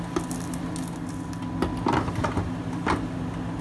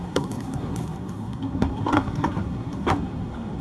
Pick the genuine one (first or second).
first